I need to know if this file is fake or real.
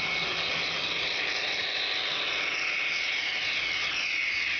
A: real